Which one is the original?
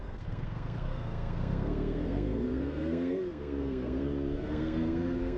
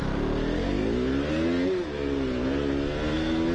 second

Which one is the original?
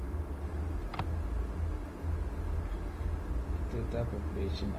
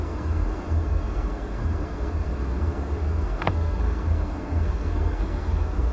first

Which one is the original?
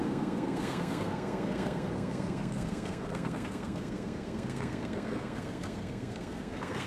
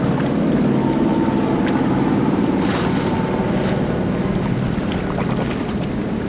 second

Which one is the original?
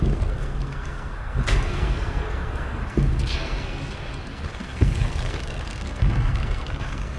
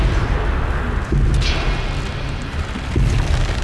second